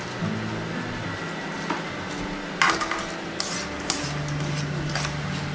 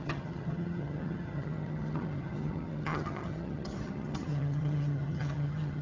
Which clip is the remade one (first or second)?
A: second